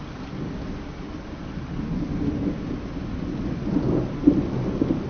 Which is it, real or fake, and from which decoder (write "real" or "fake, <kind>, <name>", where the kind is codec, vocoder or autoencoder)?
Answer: real